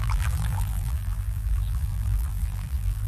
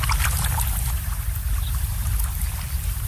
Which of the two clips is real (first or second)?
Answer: second